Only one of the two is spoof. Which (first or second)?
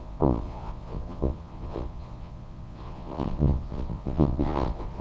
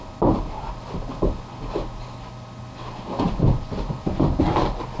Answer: first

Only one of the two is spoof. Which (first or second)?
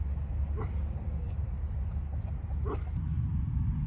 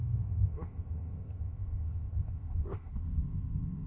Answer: second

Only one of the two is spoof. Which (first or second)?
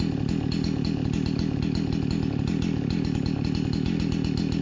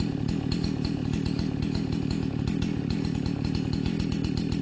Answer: second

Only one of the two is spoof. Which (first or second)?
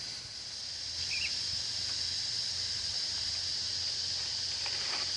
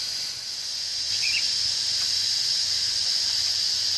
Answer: second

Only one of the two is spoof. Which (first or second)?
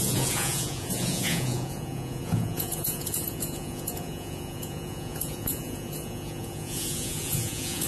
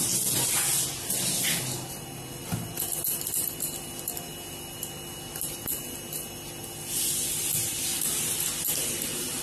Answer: first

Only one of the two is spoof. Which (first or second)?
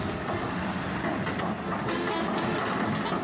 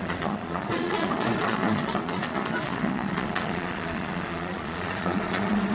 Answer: second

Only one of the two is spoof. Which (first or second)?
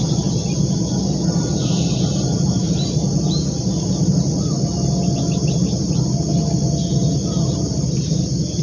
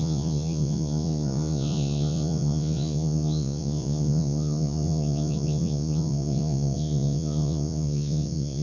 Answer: second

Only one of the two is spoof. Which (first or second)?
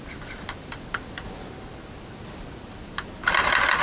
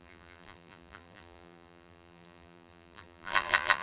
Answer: second